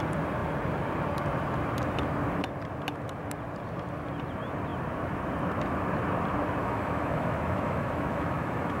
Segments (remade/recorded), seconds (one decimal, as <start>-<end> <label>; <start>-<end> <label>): 0.0-6.6 recorded; 6.6-8.8 remade